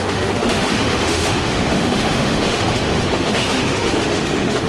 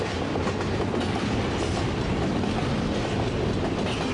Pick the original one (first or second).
second